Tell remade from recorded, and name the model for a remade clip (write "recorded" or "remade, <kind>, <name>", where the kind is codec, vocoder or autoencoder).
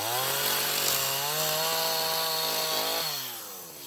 recorded